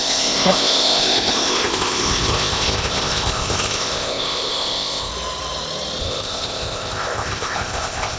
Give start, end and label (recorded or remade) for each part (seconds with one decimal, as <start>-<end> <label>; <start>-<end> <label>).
0.0-5.1 remade; 5.1-6.0 recorded; 6.0-8.2 remade